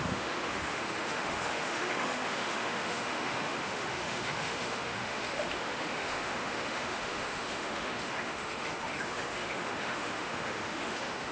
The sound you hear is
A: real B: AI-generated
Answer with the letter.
B